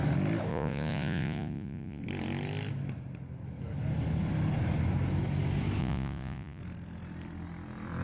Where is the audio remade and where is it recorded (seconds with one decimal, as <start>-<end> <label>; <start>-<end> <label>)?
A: 0.0-0.5 recorded; 0.5-2.0 remade; 2.0-5.8 recorded; 5.8-6.6 remade; 6.6-8.0 recorded